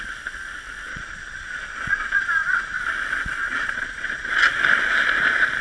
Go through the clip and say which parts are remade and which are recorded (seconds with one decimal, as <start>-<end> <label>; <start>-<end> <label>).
0.0-0.9 recorded; 0.9-2.8 remade; 2.8-3.4 recorded; 3.4-4.3 remade; 4.3-5.6 recorded